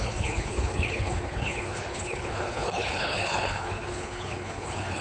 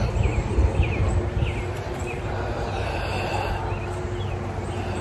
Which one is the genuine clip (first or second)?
second